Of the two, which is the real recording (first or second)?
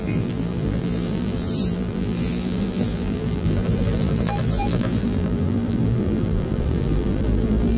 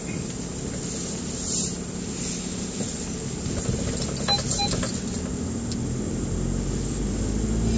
second